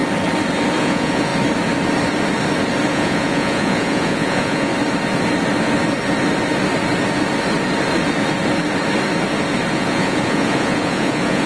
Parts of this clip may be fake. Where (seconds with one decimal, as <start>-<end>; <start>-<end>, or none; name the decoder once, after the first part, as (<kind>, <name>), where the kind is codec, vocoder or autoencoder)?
0.8-1.3 (vocoder, Vocos); 2.9-4.7; 9.7-11.5